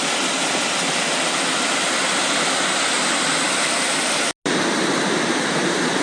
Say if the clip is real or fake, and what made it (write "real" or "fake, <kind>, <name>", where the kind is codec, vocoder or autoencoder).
real